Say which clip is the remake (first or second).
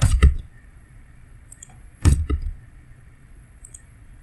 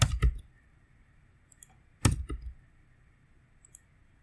first